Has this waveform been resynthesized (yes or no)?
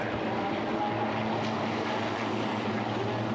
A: no